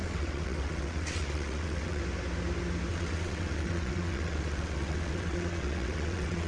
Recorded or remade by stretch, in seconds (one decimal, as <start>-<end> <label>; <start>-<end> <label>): 0.0-2.0 remade; 2.0-2.9 recorded; 2.9-6.5 remade